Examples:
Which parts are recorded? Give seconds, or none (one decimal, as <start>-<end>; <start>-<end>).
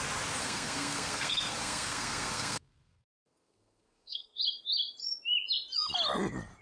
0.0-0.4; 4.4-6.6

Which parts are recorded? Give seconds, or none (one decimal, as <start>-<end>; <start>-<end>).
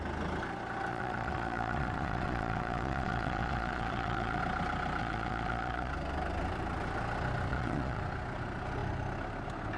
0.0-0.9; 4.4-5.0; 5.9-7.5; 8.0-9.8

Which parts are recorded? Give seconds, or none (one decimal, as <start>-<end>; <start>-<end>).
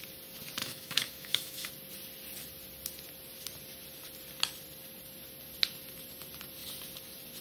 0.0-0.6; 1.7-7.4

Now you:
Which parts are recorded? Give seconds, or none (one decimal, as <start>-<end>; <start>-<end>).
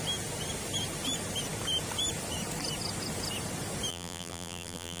0.0-3.9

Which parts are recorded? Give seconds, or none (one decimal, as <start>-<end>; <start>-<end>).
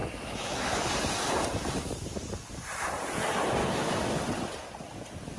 0.8-3.6; 4.1-5.4